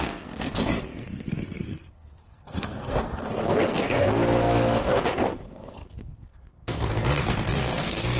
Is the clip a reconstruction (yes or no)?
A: yes